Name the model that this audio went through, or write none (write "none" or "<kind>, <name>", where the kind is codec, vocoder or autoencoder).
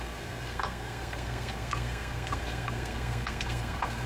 codec, SNAC